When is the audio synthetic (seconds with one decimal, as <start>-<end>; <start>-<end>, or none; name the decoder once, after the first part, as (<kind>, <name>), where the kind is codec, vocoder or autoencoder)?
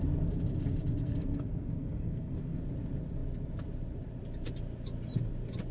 1.0-2.6 (codec, SNAC)